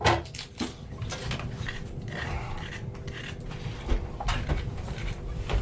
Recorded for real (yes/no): yes